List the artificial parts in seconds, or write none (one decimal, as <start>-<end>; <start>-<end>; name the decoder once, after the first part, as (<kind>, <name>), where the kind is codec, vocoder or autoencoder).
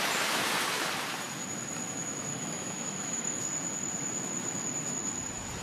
2.3-3.4 (autoencoder, DAC-VAE)